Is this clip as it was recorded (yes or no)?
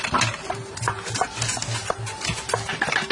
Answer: yes